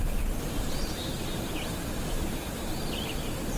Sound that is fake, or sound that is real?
fake